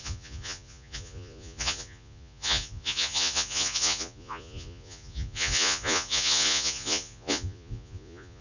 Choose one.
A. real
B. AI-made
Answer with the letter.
B